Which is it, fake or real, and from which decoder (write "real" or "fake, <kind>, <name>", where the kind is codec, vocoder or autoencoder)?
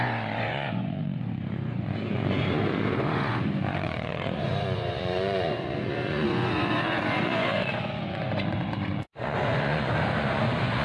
fake, vocoder, Vocos